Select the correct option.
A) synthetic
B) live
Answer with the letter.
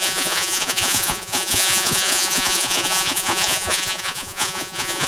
A